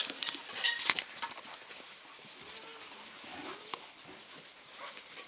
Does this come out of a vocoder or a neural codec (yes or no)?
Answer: no